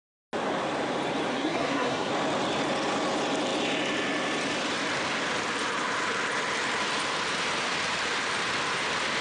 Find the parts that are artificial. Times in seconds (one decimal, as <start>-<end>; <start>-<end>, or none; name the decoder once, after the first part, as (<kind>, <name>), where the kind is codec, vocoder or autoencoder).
1.3-2.1 (codec, SNAC)